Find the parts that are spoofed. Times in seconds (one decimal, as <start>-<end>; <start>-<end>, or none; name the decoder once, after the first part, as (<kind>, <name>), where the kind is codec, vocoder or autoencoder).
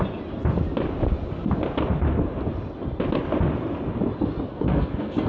4.5-5.3 (codec, SNAC)